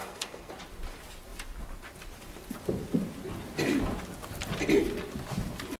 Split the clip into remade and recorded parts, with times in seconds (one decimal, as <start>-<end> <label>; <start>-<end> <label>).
0.0-0.5 remade; 0.5-5.8 recorded

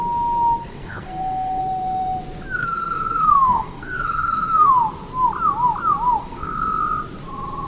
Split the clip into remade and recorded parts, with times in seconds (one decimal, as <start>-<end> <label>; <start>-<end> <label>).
0.0-0.6 recorded; 0.6-1.6 remade; 1.6-2.6 recorded; 2.6-4.7 remade; 4.7-6.2 recorded; 6.2-6.8 remade; 6.8-7.7 recorded

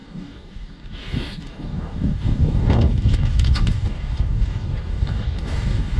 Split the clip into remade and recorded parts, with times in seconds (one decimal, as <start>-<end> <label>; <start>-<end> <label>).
0.0-6.0 remade

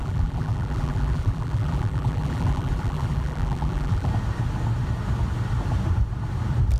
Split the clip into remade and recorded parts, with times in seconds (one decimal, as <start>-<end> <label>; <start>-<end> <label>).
0.0-4.1 remade; 4.1-6.8 recorded

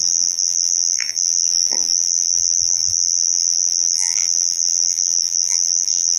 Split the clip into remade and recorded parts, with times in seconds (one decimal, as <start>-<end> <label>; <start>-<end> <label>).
0.0-6.2 remade

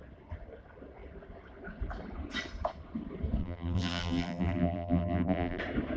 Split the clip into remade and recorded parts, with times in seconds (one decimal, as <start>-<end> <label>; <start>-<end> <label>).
0.0-3.4 recorded; 3.4-5.6 remade; 5.6-6.0 recorded